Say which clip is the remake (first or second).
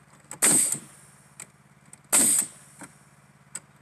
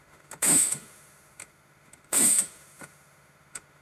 second